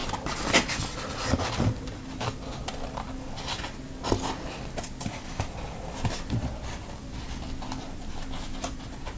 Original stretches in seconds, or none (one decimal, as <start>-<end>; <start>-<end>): 0.0-9.2